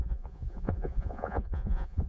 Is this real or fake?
fake